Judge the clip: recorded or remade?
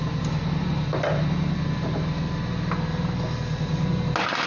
recorded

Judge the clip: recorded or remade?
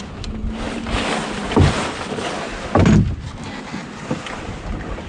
recorded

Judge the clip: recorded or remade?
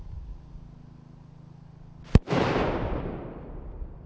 recorded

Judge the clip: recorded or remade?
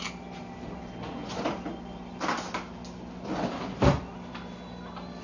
recorded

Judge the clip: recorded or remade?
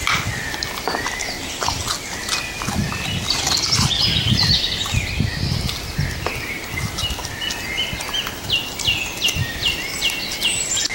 recorded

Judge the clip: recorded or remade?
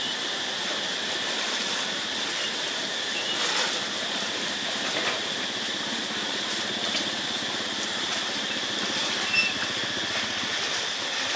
recorded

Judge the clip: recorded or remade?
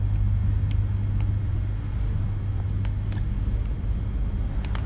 recorded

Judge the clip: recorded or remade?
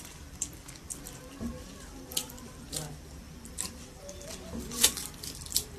remade